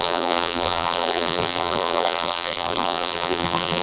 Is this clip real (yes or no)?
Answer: no